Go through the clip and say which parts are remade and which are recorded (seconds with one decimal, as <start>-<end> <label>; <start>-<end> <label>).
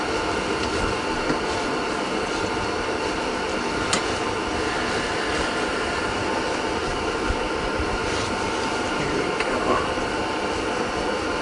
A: 0.0-11.4 recorded